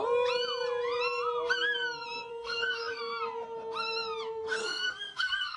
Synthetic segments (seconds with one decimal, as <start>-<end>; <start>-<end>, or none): 2.3-3.0; 4.6-5.6

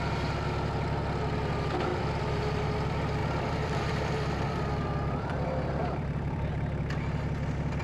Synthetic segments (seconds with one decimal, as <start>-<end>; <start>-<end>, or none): 1.9-2.4; 3.2-6.5

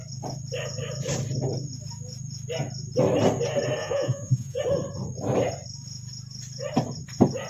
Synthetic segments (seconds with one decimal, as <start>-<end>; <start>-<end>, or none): 3.8-4.6

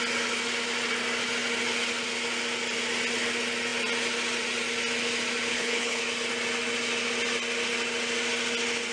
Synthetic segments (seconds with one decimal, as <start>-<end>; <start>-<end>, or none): 5.5-6.0

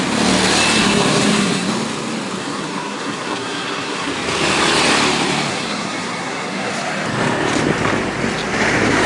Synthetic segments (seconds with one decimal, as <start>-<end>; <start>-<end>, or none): 0.8-1.7; 2.4-4.1; 5.5-6.7

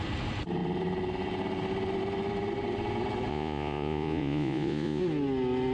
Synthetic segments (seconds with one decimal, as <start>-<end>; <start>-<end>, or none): 3.3-5.0

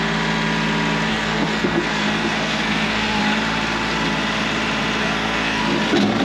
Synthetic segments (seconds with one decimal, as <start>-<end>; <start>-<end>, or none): 1.1-3.2; 5.0-5.6